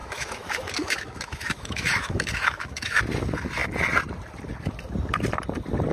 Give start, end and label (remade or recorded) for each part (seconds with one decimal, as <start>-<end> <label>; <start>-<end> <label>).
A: 0.0-3.0 remade; 3.0-5.9 recorded